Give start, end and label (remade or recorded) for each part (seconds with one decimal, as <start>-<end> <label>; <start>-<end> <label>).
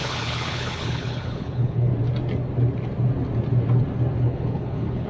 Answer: 0.0-1.9 remade; 1.9-4.2 recorded; 4.2-5.1 remade